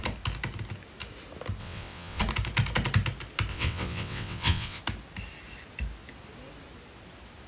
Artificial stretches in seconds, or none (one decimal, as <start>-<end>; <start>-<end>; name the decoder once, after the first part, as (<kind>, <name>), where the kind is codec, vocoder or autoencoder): 1.6-2.2 (vocoder, WaveNeXt); 3.5-4.8

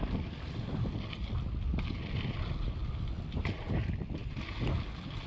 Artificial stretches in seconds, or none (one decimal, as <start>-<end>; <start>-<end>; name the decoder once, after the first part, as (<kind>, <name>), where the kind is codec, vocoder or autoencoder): none